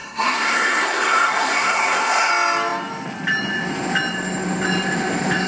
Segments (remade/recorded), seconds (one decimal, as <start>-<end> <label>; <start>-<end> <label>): 0.0-2.3 remade; 2.3-5.5 recorded